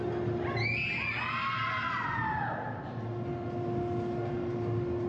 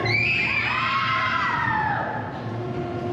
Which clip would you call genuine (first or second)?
first